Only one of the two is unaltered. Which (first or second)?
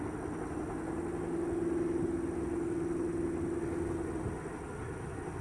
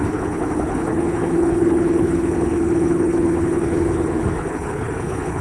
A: first